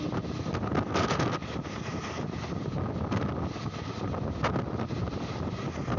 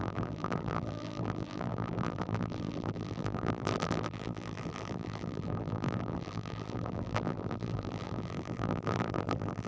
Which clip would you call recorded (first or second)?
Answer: first